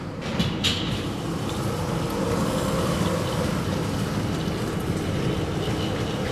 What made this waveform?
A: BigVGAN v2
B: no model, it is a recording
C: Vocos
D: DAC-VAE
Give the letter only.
B